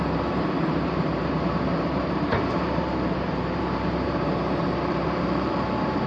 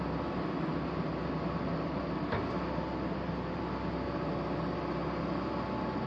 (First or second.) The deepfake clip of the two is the first